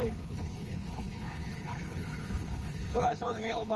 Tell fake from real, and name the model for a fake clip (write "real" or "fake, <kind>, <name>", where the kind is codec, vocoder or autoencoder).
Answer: fake, codec, HILCodec